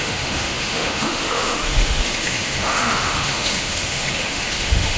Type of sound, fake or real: fake